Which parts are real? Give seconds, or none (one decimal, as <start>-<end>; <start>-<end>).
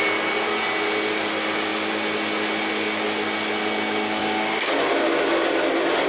0.0-4.2; 4.7-6.1